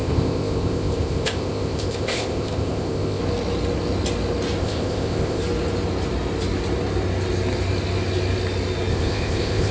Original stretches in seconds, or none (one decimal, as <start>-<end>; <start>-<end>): 3.2-4.6; 5.4-8.9